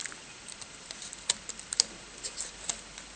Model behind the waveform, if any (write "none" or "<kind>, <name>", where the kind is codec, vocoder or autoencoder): none